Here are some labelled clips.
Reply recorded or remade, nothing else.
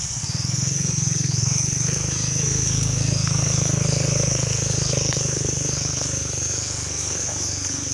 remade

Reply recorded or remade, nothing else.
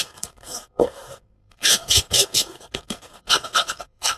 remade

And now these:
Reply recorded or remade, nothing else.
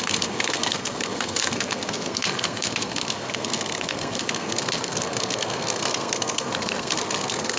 remade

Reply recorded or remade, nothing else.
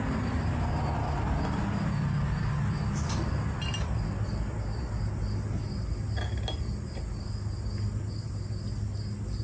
recorded